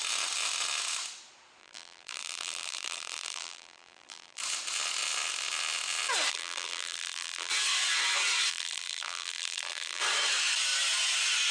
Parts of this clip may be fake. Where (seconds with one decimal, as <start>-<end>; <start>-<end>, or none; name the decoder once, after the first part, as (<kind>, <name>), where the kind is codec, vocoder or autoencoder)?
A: 1.6-4.4 (vocoder, BigVGAN v2); 6.3-7.5; 8.5-10.0

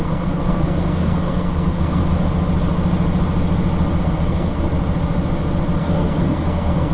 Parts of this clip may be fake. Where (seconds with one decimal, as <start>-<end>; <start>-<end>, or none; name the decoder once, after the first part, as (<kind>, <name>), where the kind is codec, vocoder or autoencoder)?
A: 0.0-2.0 (codec, SNAC); 4.0-4.7; 5.8-6.9